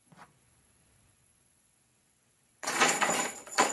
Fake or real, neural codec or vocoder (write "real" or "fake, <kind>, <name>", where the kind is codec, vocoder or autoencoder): fake, vocoder, Vocos